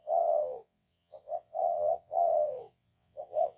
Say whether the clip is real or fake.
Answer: fake